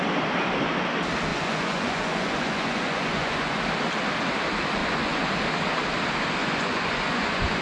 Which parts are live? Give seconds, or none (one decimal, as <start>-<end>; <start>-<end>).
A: 0.0-1.3; 3.6-4.8; 5.3-6.4